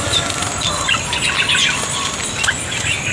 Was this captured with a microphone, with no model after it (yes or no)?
yes